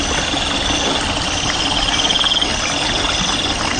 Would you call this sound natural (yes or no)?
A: yes